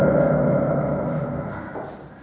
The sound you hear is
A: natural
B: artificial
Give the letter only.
A